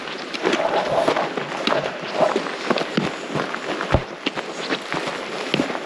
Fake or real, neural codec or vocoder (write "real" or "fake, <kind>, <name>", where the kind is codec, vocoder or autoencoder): real